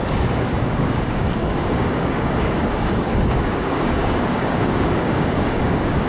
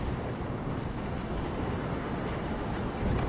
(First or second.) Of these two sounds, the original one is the second